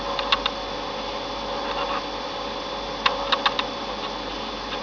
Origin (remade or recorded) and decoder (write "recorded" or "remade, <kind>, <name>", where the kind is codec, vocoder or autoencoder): recorded